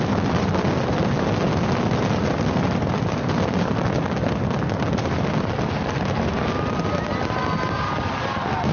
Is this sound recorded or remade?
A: recorded